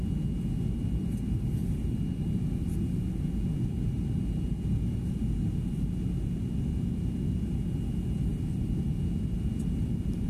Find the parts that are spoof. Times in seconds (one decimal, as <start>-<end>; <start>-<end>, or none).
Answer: 8.3-9.0